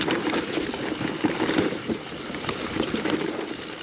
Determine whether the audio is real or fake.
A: fake